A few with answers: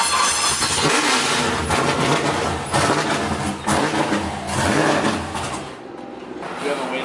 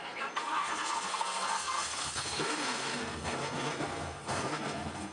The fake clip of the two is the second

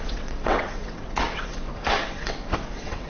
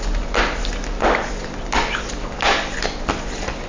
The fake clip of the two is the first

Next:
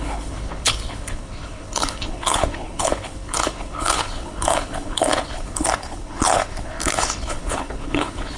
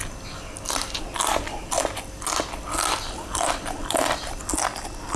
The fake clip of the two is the first